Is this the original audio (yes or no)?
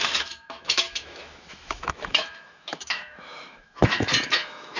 no